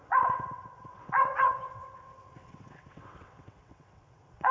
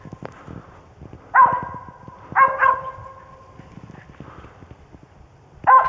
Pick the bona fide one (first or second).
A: second